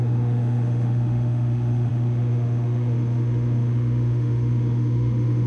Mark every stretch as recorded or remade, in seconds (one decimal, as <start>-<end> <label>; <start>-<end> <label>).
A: 0.0-5.5 remade